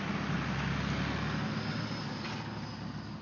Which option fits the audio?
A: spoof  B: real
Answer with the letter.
B